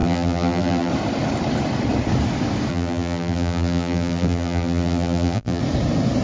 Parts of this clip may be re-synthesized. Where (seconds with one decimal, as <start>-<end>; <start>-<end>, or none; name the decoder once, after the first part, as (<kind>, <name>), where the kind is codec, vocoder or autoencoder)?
0.0-0.9 (vocoder, BigVGAN v2); 2.7-5.6